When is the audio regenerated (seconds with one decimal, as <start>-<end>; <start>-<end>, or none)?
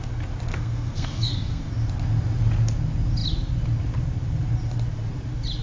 0.5-1.7